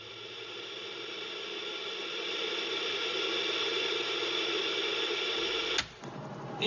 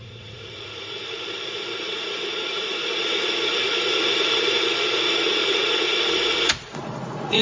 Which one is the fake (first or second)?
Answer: second